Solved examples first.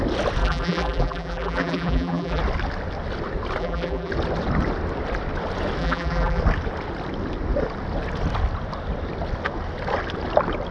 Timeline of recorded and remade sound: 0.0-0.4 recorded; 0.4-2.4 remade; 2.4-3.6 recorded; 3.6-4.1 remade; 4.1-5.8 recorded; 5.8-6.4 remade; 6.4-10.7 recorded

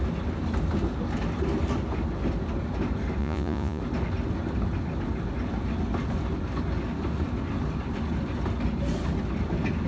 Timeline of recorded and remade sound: 0.0-3.2 recorded; 3.2-3.8 remade; 3.8-9.9 recorded